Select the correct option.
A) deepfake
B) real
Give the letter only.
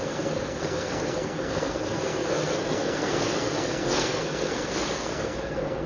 A